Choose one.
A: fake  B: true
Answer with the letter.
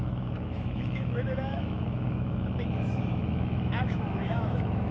A